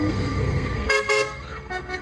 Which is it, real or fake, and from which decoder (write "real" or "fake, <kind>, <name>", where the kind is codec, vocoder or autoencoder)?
fake, codec, SNAC